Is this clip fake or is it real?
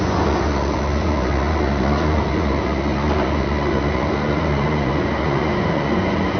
fake